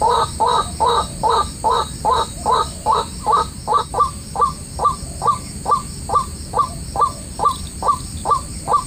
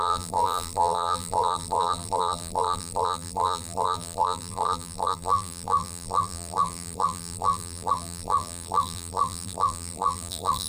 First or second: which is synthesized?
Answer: second